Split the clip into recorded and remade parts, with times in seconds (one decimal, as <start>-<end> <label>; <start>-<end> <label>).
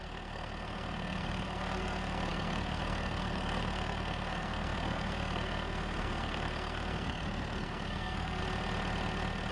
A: 0.0-8.4 remade; 8.4-9.5 recorded